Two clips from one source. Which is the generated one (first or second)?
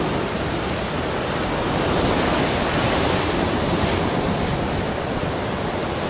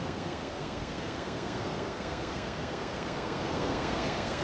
second